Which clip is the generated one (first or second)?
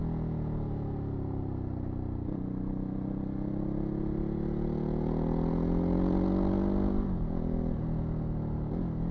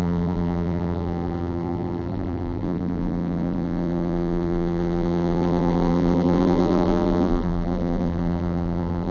second